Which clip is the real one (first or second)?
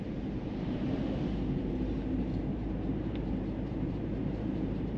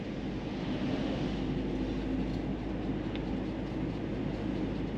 second